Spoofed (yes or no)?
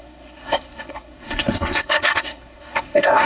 yes